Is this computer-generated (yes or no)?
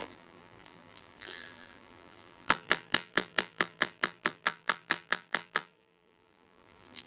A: yes